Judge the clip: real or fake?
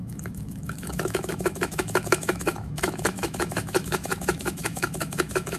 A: fake